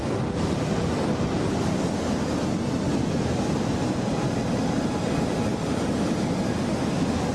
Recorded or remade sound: recorded